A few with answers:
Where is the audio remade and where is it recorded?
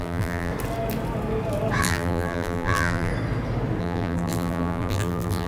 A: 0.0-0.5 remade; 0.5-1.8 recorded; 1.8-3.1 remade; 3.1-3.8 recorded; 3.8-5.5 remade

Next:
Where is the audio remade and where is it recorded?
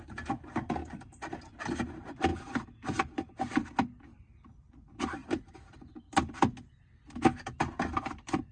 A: 0.0-5.2 recorded; 5.2-6.0 remade; 6.0-8.5 recorded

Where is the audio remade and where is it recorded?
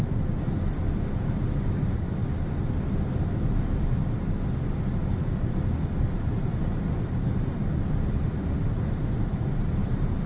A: 0.0-10.3 recorded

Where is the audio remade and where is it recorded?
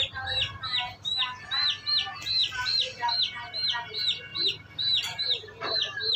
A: 0.0-2.4 recorded; 2.4-3.1 remade; 3.1-4.3 recorded; 4.3-6.2 remade